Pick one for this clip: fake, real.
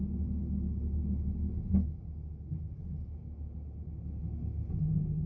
real